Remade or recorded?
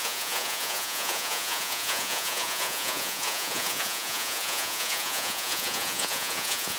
remade